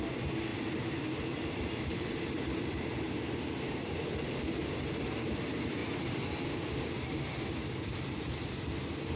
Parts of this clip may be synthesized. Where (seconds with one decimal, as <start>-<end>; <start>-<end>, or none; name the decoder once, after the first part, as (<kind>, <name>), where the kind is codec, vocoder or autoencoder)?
0.0-0.5 (vocoder, BigVGAN v2); 1.5-5.8; 7.2-9.2